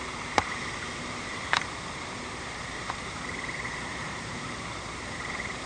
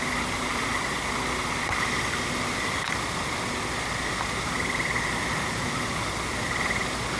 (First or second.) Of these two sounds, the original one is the second